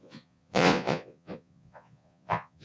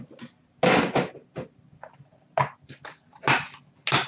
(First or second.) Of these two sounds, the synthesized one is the first